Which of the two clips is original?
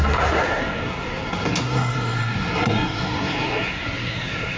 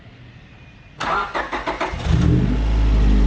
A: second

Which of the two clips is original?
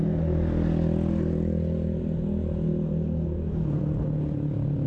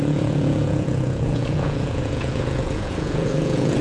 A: first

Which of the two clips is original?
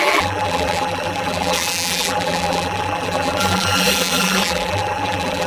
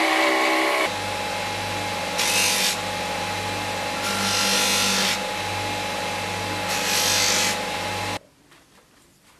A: second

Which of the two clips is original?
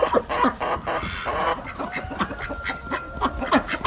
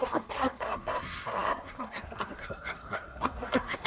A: first